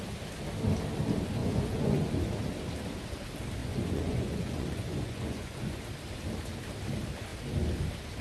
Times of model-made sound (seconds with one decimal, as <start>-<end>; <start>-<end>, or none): 1.4-2.1; 3.6-5.8